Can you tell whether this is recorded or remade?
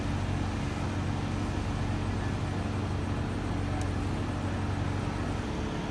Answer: recorded